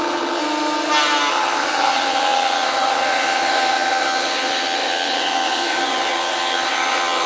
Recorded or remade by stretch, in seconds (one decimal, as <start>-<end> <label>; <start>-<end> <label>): 0.0-0.4 remade; 0.4-1.3 recorded; 1.3-7.3 remade

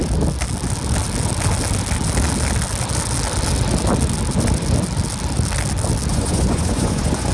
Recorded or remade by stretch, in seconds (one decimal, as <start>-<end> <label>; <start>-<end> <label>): 0.0-6.1 recorded; 6.1-7.3 remade

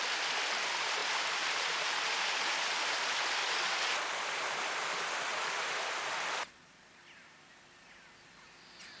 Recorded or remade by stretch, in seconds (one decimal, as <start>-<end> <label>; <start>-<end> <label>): 0.0-1.0 recorded; 1.0-3.6 remade; 3.6-5.3 recorded; 5.3-6.6 remade; 6.6-9.0 recorded

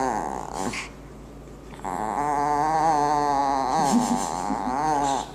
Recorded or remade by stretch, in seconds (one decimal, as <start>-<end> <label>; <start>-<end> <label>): 0.0-5.3 recorded

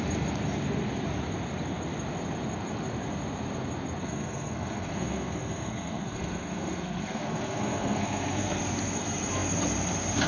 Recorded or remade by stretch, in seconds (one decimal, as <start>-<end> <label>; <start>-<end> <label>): 0.0-4.0 recorded; 4.0-8.6 remade; 8.6-10.3 recorded

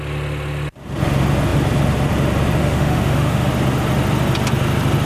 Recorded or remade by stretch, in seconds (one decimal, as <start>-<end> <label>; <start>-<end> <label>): 0.0-2.6 recorded; 2.6-3.5 remade; 3.5-5.0 recorded

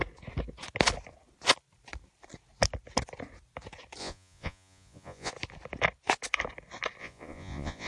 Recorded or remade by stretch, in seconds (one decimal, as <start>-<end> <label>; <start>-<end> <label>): 0.0-4.0 recorded; 4.0-5.3 remade; 5.3-7.0 recorded; 7.0-7.9 remade

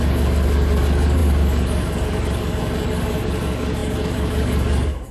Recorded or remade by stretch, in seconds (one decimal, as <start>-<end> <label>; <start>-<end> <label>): 0.0-5.1 remade